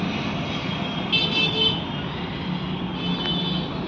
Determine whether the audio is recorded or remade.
recorded